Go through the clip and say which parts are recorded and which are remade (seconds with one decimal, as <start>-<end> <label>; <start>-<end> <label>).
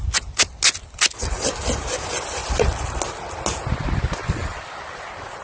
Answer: 0.0-5.4 recorded